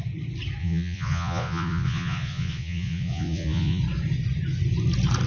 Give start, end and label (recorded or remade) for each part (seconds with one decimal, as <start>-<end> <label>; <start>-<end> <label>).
0.0-0.6 recorded; 0.6-3.8 remade; 3.8-5.3 recorded